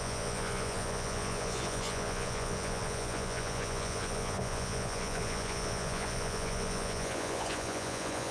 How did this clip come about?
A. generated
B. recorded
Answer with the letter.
A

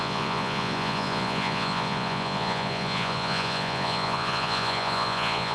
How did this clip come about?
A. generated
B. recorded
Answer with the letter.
A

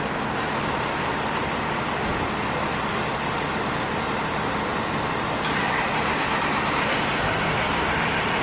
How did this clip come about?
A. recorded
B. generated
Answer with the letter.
A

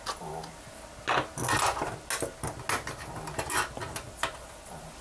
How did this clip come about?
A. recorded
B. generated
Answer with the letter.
A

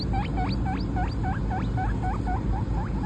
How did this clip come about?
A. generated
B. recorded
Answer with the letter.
B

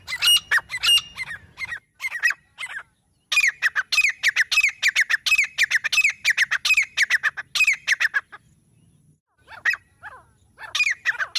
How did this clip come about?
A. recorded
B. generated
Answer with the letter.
A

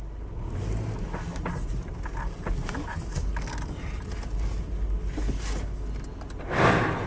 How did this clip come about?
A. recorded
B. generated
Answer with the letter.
A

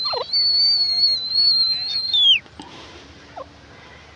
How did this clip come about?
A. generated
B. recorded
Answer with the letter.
B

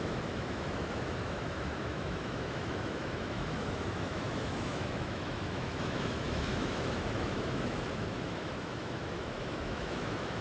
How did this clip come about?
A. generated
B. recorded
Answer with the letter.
A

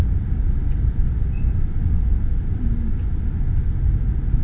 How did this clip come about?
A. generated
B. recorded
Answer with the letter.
B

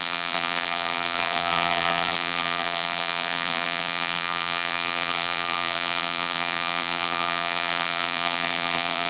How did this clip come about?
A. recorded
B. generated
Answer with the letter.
B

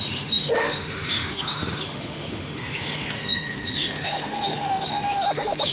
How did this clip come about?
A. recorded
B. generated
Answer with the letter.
B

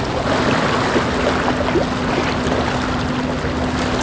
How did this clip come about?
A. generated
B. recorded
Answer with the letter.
B